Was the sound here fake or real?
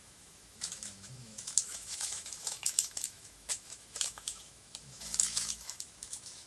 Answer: fake